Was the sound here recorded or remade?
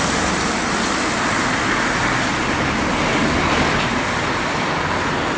recorded